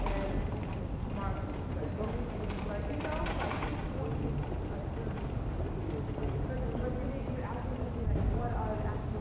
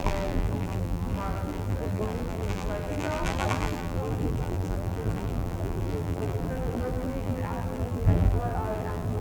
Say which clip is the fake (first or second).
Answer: second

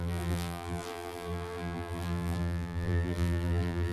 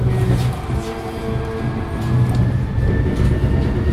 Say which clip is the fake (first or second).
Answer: first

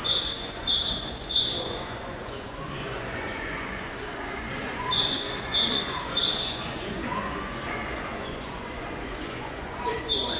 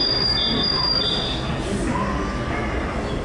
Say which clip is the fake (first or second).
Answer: first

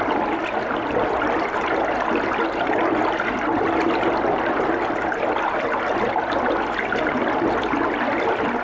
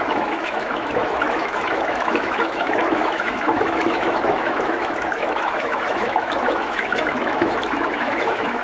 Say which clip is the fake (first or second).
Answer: second